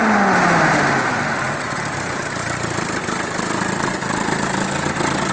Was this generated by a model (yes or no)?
no